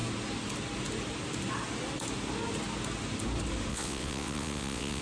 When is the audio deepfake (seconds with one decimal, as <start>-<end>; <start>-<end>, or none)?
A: 3.7-5.0